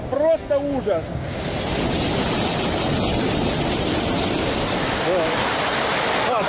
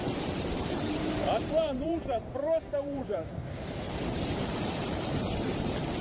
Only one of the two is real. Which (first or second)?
first